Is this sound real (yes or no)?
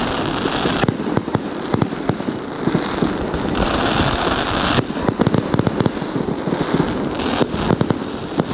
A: yes